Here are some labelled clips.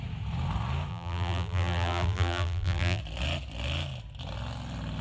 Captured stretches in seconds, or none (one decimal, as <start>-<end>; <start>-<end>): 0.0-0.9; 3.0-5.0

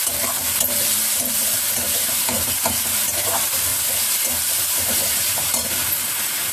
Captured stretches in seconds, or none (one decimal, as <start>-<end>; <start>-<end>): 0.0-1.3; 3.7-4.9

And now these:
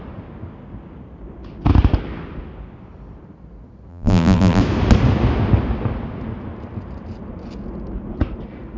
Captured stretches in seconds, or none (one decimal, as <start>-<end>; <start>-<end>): 0.0-3.9; 4.6-8.8

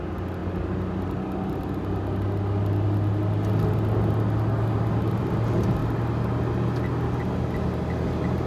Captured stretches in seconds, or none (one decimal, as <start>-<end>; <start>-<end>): 0.0-8.5